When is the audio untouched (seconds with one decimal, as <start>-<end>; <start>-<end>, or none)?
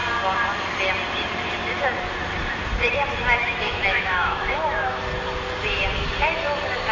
0.0-3.4; 5.0-6.9